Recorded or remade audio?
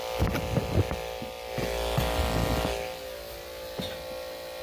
recorded